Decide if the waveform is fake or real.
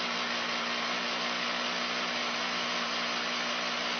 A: real